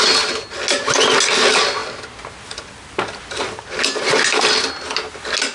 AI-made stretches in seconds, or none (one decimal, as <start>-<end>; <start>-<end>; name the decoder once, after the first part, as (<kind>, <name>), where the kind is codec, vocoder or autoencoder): none